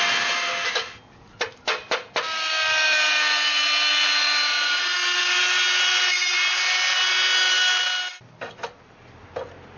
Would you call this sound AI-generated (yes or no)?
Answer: no